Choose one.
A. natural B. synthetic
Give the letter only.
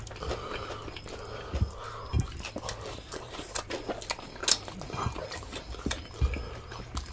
A